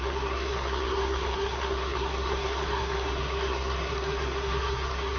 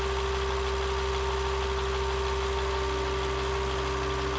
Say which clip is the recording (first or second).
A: second